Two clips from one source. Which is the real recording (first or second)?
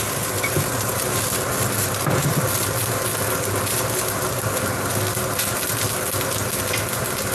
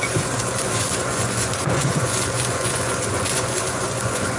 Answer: first